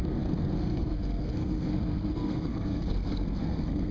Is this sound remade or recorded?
remade